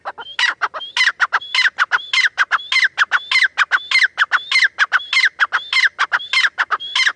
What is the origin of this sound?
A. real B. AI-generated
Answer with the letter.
A